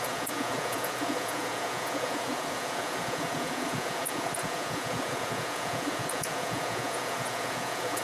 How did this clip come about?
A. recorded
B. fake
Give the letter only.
B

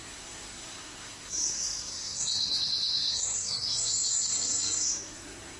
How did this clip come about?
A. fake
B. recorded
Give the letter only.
A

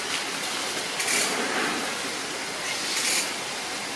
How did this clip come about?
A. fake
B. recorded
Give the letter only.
B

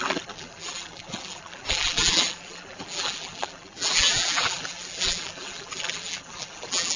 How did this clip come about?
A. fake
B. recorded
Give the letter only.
A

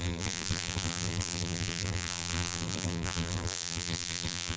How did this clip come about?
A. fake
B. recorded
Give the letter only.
A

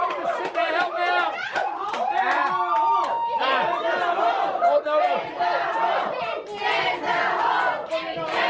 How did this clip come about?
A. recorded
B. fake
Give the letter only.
A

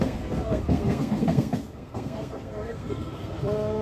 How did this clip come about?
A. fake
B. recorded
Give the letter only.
A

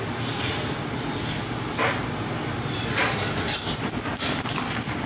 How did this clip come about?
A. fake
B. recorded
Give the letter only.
B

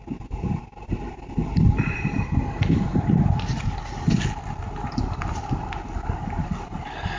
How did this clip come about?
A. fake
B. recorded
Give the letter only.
B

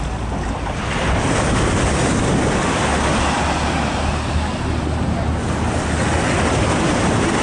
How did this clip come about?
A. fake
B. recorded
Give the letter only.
B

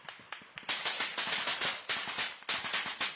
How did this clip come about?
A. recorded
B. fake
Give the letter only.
A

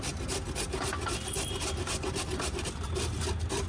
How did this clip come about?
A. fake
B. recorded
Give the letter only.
B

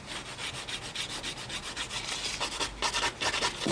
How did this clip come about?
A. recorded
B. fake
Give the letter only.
A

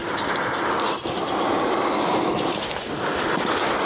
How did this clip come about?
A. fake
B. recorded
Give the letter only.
A